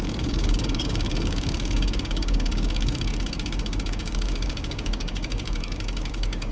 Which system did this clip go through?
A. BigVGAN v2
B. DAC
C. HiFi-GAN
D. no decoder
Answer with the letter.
B